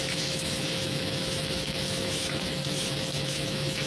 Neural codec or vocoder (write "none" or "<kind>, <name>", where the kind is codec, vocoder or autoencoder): autoencoder, DAC-VAE